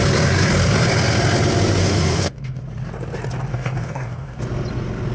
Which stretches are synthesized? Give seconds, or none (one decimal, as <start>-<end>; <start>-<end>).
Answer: 1.8-2.6; 3.5-4.4